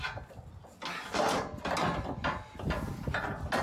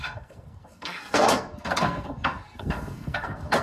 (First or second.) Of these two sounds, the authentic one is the first